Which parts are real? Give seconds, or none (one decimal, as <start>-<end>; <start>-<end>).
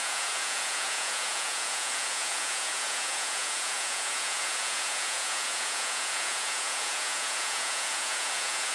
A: none